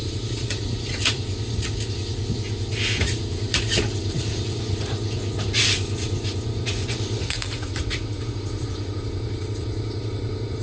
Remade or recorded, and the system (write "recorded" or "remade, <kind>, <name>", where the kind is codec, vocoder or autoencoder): remade, vocoder, Vocos